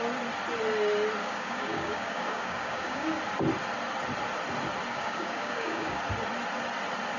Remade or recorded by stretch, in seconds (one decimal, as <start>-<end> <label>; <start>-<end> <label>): 0.0-1.2 recorded; 1.2-3.2 remade; 3.2-4.9 recorded; 4.9-6.0 remade; 6.0-7.2 recorded